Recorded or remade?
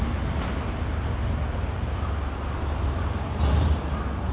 recorded